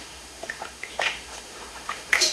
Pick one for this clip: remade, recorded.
remade